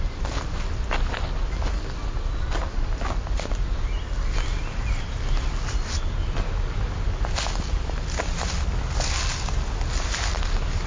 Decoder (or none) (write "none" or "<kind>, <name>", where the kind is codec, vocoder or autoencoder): none